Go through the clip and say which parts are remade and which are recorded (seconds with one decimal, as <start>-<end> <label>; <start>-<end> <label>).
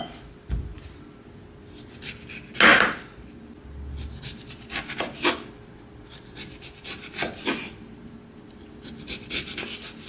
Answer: 0.0-10.1 recorded